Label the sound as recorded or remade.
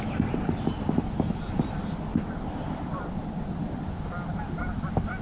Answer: recorded